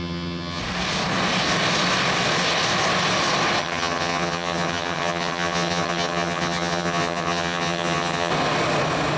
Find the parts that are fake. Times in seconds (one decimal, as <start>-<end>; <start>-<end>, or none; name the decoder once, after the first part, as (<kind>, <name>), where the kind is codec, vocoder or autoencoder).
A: 0.0-0.6 (vocoder, HiFi-GAN); 3.6-8.3